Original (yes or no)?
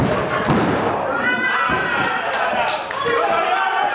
yes